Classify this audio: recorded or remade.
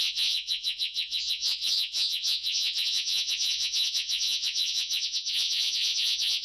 remade